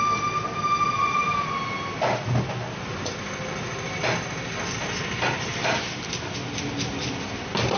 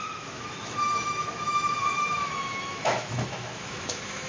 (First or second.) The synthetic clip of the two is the second